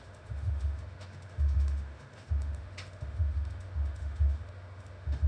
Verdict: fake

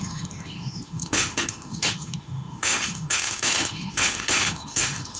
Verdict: fake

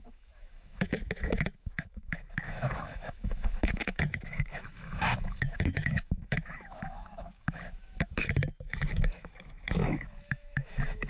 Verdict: fake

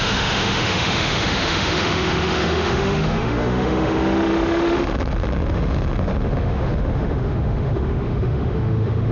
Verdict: fake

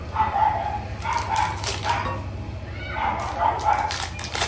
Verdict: real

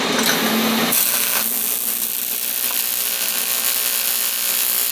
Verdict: real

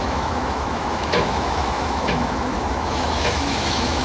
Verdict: fake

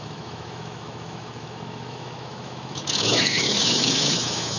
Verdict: fake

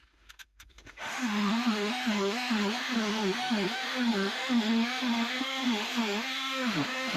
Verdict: fake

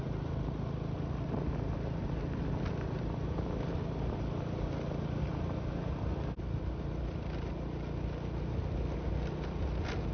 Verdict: real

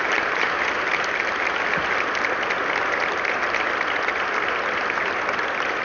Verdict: real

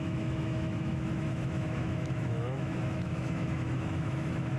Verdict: fake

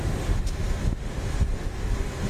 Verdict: fake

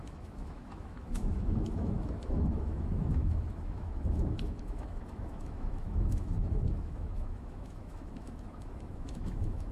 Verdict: fake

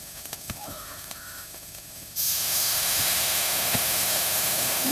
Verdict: fake